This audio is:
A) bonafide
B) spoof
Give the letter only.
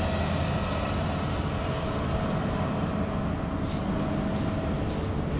A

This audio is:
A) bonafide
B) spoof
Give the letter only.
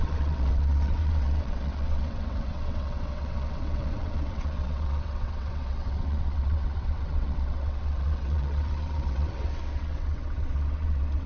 B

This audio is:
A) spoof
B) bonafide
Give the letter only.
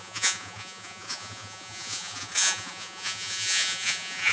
A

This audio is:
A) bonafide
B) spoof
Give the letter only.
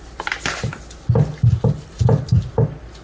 A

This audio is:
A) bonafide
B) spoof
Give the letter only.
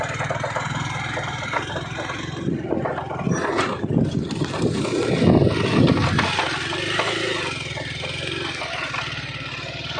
A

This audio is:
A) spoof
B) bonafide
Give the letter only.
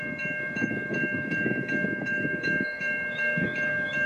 A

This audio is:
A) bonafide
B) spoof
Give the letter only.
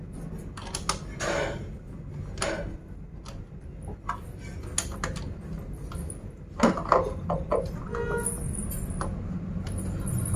A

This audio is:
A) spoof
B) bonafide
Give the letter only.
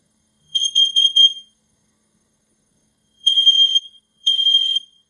A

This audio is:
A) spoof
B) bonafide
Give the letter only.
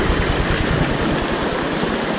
B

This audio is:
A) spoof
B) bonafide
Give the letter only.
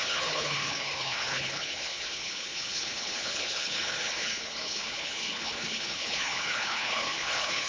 A